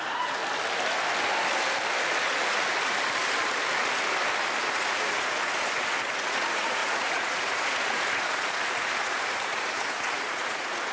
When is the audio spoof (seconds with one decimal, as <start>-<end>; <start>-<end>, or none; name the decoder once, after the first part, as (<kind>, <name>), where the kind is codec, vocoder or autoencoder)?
0.0-0.4 (vocoder, Vocos); 4.6-10.9